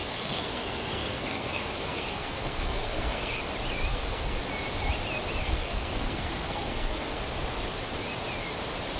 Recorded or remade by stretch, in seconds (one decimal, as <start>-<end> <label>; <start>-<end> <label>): 0.0-3.4 remade; 3.4-3.9 recorded; 3.9-4.4 remade; 4.4-5.4 recorded; 5.4-7.2 remade; 7.2-9.0 recorded

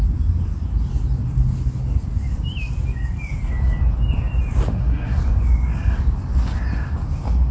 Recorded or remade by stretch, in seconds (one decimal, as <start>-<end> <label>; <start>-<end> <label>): 0.0-4.7 recorded; 4.7-5.2 remade; 5.2-7.5 recorded